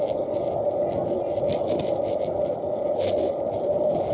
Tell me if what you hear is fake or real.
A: real